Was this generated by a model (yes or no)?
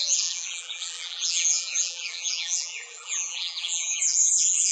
yes